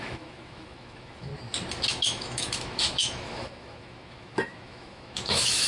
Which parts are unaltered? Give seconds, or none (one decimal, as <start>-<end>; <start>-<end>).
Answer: 1.3-1.9